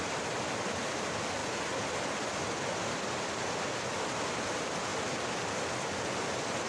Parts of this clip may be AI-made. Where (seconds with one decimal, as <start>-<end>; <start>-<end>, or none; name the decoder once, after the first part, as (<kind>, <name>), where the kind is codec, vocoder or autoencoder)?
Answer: none